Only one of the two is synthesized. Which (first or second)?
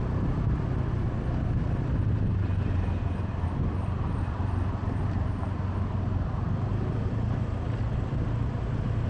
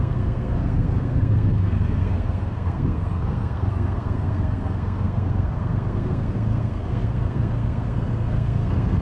second